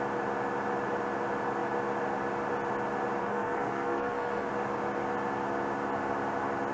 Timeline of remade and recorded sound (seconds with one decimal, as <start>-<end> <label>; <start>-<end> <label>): 0.0-3.2 recorded; 3.2-4.5 remade; 4.5-6.7 recorded